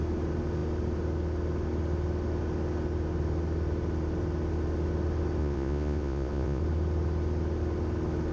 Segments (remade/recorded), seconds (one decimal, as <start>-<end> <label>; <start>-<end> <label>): 0.0-5.4 recorded; 5.4-6.6 remade; 6.6-8.3 recorded